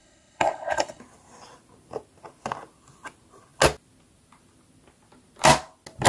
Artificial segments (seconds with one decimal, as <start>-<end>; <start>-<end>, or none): 0.0-1.0